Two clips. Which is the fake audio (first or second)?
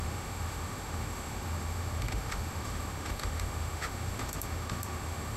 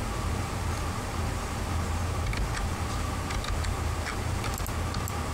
first